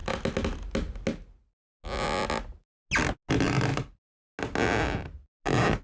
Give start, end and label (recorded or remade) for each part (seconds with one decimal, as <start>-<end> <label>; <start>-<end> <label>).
0.0-5.8 recorded